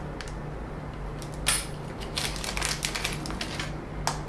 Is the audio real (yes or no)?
yes